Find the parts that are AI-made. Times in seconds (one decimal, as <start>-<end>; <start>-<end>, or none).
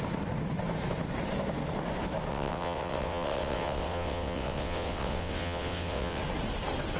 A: 2.3-6.2